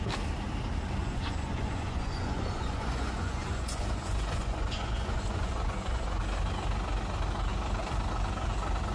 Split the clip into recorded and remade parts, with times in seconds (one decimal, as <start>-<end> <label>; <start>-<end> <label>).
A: 0.0-1.0 recorded; 1.0-6.2 remade; 6.2-8.9 recorded